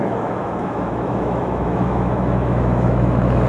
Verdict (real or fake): fake